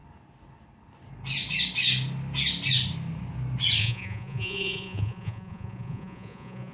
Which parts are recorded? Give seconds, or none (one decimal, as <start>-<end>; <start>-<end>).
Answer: 0.0-3.8